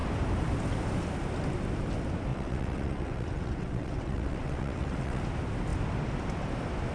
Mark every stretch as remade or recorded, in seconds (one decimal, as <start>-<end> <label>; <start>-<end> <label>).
0.0-2.3 recorded; 2.3-5.2 remade; 5.2-6.9 recorded